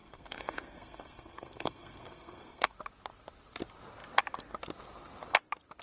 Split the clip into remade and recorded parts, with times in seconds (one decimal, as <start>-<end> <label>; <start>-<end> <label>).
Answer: 0.0-2.7 remade; 2.7-5.8 recorded